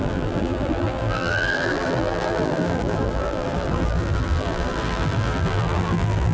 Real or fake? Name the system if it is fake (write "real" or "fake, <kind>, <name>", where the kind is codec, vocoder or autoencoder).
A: fake, vocoder, BigVGAN v2